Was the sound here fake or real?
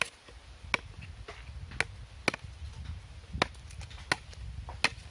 real